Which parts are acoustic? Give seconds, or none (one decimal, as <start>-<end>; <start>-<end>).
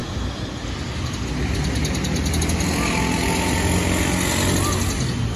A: 0.0-5.4